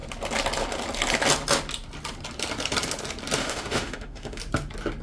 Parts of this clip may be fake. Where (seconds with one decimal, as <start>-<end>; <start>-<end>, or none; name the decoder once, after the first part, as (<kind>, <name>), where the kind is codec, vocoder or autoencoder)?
3.4-4.4 (autoencoder, DAC-VAE)